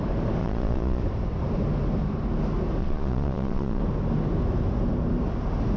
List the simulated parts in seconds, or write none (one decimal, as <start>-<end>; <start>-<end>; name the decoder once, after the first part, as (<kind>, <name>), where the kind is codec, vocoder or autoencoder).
0.4-1.0 (vocoder, Vocos); 2.8-3.8